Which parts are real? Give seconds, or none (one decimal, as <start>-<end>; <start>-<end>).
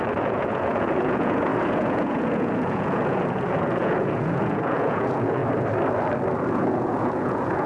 5.4-6.5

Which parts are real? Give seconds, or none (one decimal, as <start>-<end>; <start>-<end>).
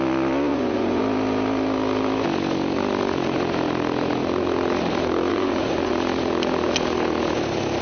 0.0-0.5; 1.0-5.3; 5.9-7.8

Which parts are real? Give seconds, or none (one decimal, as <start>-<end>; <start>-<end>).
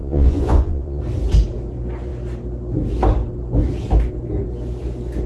1.0-5.3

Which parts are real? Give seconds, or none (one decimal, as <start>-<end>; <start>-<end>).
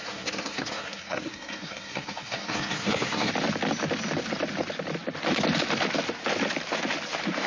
3.3-7.5